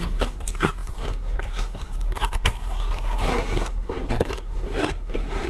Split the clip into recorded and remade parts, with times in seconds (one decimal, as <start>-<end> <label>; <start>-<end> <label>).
0.0-5.5 remade